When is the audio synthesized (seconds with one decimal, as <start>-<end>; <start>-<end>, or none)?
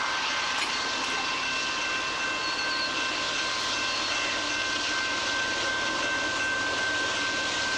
none